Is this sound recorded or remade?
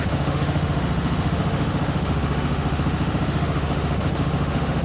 remade